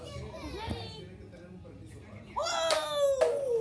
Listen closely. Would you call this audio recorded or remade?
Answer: recorded